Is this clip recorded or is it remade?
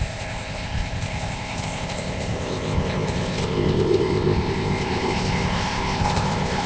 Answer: remade